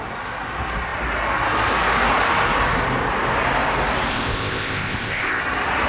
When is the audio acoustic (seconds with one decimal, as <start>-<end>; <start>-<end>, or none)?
0.0-4.1; 5.4-5.9